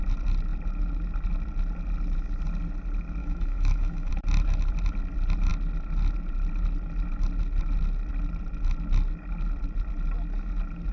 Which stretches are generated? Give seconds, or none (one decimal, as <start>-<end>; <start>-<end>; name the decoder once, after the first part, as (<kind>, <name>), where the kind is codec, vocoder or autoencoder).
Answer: 3.2-4.1 (autoencoder, DAC-VAE)